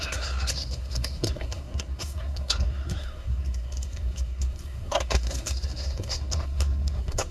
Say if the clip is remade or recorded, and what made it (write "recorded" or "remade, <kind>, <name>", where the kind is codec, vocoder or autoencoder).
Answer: remade, codec, SNAC